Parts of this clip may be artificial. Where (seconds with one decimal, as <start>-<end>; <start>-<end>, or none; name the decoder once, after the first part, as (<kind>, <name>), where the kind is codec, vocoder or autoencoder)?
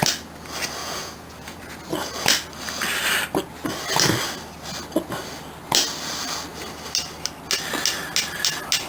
0.8-1.6 (vocoder, Vocos)